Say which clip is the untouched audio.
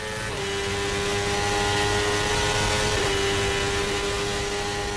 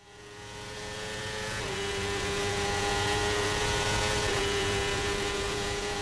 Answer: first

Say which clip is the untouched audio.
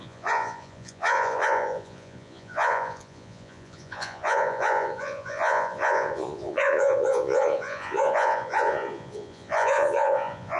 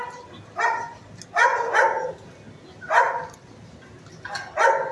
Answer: second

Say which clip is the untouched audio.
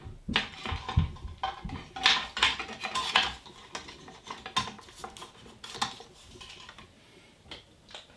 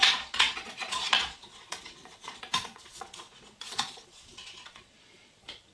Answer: first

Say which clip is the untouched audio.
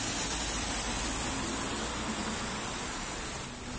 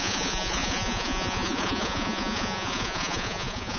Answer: first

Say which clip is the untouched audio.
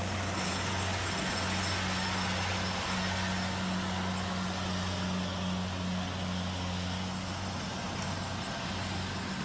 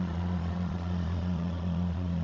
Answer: first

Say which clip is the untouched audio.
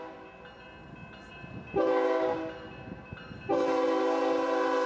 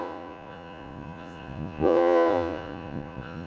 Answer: first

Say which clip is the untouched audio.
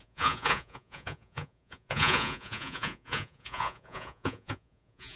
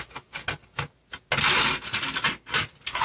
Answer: second